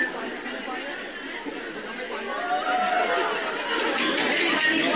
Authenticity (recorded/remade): recorded